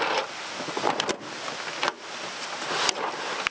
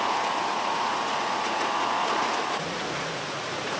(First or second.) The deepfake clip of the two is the second